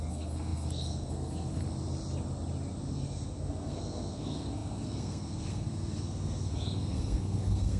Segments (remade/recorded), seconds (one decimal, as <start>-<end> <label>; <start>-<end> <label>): 0.0-1.6 remade; 1.6-2.9 recorded; 2.9-7.8 remade